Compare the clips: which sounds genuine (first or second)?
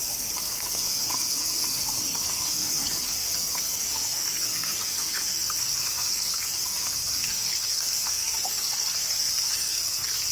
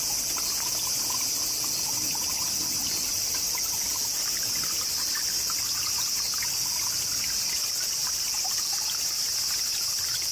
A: second